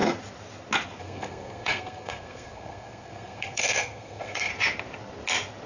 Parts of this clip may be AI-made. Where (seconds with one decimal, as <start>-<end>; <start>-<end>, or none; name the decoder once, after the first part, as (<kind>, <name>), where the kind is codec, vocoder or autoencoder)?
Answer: 1.0-4.5 (codec, SNAC)